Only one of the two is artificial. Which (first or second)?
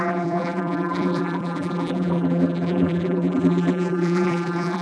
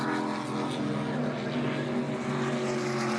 first